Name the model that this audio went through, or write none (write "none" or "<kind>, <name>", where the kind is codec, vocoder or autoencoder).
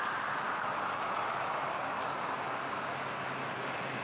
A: none